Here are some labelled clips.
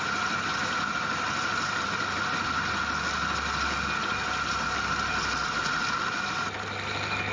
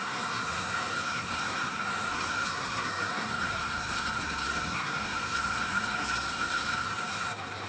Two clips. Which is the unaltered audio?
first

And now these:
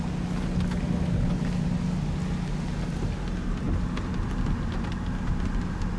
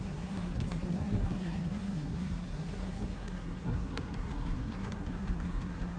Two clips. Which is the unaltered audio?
first